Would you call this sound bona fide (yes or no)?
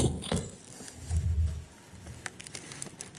yes